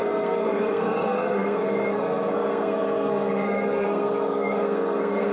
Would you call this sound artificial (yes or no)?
yes